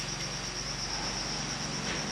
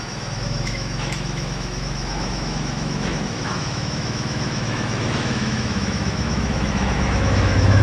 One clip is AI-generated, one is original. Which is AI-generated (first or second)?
second